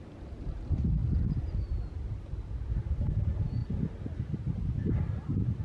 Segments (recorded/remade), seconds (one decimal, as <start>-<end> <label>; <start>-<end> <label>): 0.0-5.6 remade

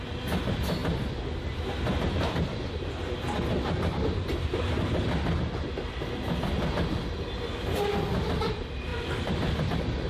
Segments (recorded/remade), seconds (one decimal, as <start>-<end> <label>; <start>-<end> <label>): 0.0-0.8 recorded; 0.8-2.8 remade; 2.8-8.9 recorded; 8.9-9.6 remade; 9.6-10.1 recorded

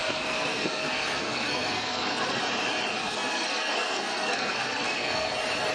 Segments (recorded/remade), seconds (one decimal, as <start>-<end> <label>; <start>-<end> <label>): 0.0-2.4 remade; 2.4-3.0 recorded; 3.0-5.3 remade; 5.3-5.7 recorded